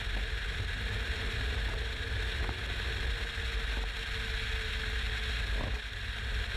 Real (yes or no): yes